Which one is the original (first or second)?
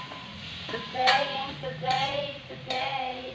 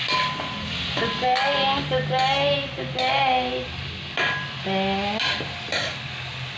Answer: second